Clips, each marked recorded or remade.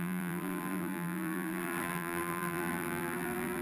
remade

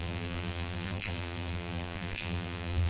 remade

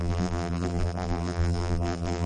remade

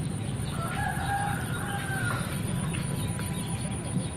remade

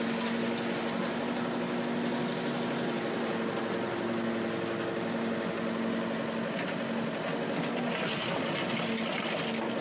recorded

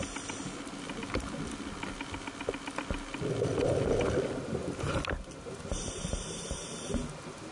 recorded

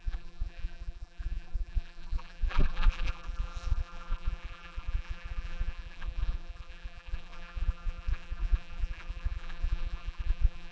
remade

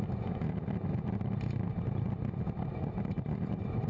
recorded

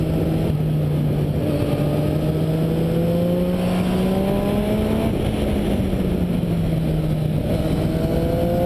recorded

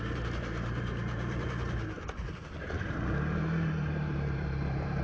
remade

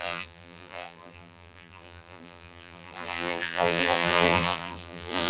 remade